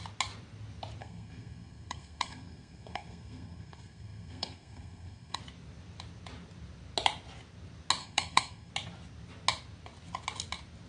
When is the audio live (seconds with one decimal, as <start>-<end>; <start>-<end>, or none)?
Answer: 0.0-1.0; 5.4-8.0; 8.7-10.9